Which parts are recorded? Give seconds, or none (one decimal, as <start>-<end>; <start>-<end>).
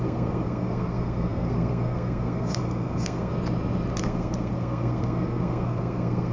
3.3-4.0